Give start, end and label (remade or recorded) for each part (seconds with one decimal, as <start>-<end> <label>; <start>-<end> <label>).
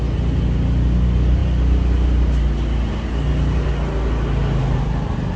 0.0-5.4 recorded